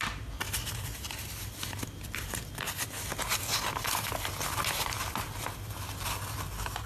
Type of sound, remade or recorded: recorded